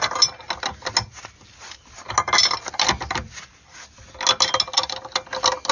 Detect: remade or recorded recorded